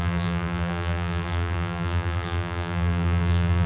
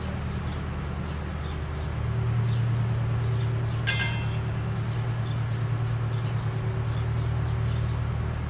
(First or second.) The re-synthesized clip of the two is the first